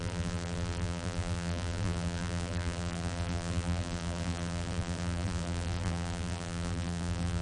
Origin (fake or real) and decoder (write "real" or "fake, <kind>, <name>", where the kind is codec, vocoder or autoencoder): fake, vocoder, BigVGAN v2